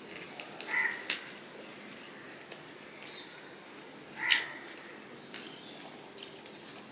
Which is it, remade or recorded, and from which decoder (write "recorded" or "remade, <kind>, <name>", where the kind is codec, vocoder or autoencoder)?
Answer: recorded